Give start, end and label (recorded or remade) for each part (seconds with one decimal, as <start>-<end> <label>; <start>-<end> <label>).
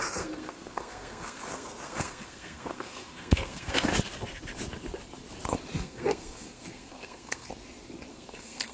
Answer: 0.0-3.9 remade; 3.9-5.8 recorded; 5.8-7.5 remade; 7.5-8.1 recorded; 8.1-8.7 remade